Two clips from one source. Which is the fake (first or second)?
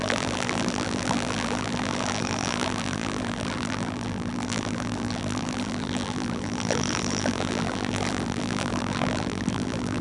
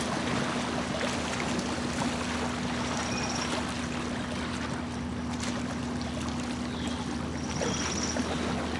first